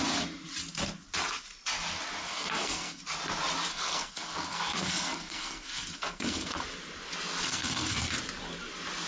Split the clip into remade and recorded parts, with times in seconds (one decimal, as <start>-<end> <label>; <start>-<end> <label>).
0.0-2.2 recorded; 2.2-3.0 remade; 3.0-3.7 recorded; 3.7-6.6 remade; 6.6-7.5 recorded; 7.5-8.1 remade; 8.1-9.1 recorded